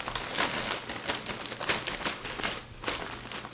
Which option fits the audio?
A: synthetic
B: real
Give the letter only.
B